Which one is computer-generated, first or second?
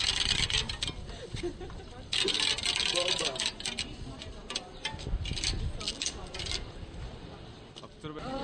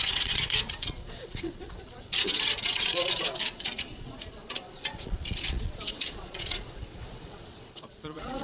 second